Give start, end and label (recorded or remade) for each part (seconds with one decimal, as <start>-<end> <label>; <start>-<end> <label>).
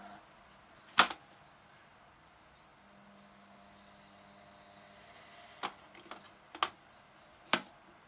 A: 0.0-8.1 recorded